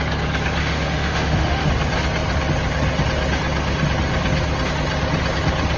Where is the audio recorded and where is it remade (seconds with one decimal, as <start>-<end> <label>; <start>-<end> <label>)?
0.0-0.6 recorded; 0.6-1.7 remade; 1.7-5.8 recorded